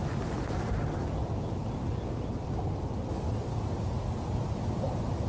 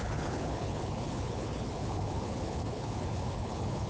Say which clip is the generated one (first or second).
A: second